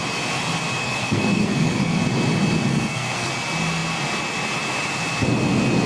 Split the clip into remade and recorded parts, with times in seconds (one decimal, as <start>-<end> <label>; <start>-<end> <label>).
0.0-0.8 recorded; 0.8-2.0 remade; 2.0-2.7 recorded; 2.7-3.3 remade; 3.3-5.9 recorded